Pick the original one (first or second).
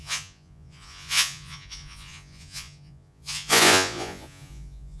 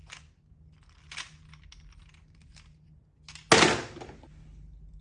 second